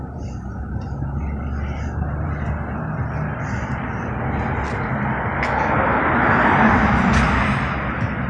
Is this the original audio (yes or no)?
yes